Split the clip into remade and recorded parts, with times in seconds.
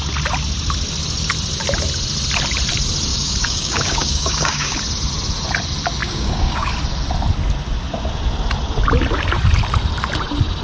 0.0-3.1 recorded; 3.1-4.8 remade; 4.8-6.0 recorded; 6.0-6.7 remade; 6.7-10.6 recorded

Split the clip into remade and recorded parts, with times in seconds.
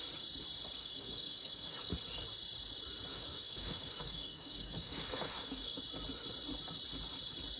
0.0-0.8 recorded; 0.8-1.9 remade; 1.9-3.1 recorded; 3.1-5.8 remade; 5.8-7.6 recorded